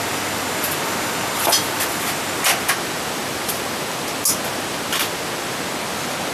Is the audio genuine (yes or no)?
yes